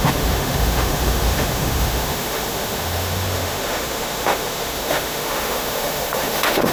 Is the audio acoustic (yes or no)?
no